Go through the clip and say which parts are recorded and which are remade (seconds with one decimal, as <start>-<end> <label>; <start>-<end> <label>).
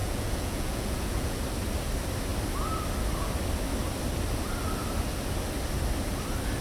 0.0-1.4 remade; 1.4-6.6 recorded